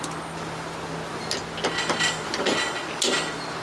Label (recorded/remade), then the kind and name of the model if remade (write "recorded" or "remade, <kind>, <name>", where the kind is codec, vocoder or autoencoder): recorded